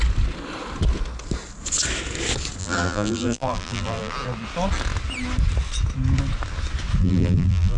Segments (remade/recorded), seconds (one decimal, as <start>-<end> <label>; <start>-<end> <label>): 0.0-2.6 recorded; 2.6-4.1 remade; 4.1-7.0 recorded; 7.0-7.8 remade